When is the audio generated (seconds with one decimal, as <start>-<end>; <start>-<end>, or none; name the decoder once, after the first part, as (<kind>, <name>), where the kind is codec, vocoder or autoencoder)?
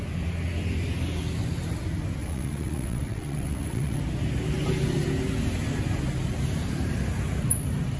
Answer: 2.2-4.0 (vocoder, WaveNeXt)